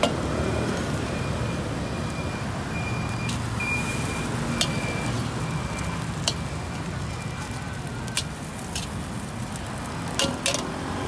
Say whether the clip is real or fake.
real